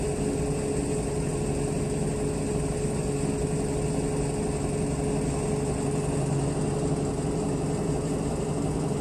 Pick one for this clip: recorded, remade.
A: recorded